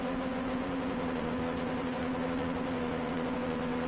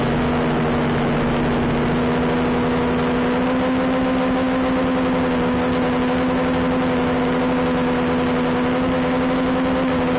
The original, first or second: second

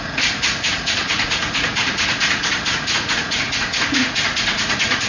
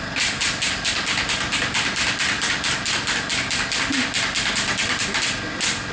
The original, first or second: second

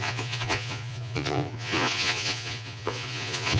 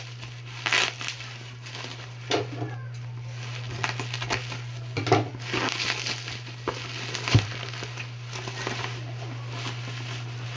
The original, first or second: second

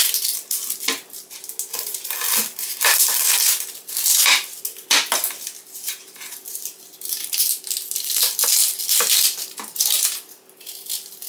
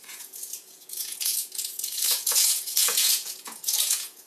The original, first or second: first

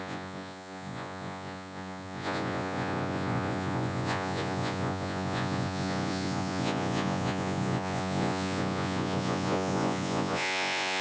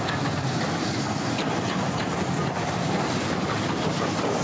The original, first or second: second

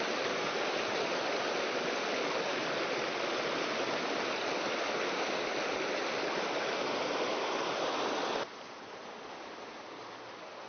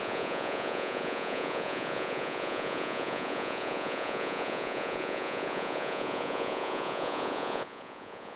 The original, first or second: first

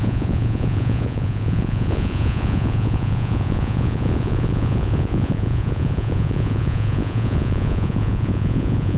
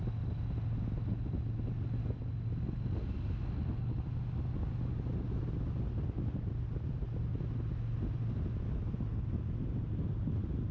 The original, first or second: second